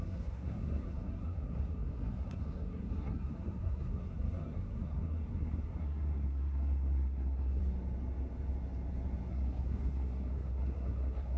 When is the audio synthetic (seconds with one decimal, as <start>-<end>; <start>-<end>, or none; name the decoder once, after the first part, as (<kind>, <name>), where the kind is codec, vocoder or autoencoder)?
0.0-7.6 (codec, SNAC); 9.3-11.4